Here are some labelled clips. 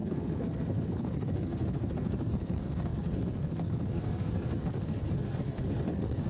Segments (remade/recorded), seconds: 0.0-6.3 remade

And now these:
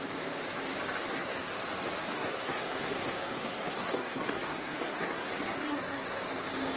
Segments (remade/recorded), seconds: 0.0-1.0 recorded; 1.0-1.6 remade; 1.6-2.1 recorded; 2.1-6.2 remade; 6.2-6.8 recorded

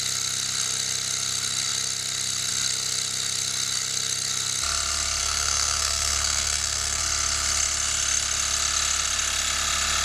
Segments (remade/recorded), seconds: 0.0-5.2 recorded; 5.2-7.0 remade; 7.0-10.0 recorded

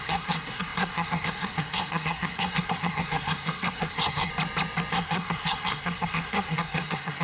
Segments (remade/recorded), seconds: 0.0-4.3 remade; 4.3-4.9 recorded; 4.9-7.2 remade

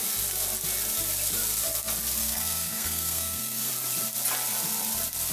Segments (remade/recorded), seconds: 0.0-2.2 recorded; 2.2-3.7 remade; 3.7-5.3 recorded